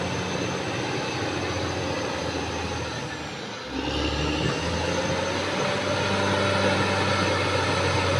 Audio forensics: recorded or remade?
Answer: recorded